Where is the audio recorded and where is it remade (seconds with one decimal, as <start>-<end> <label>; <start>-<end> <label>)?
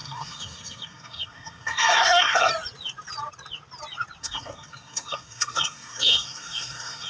0.0-2.5 remade; 2.5-4.2 recorded; 4.2-7.1 remade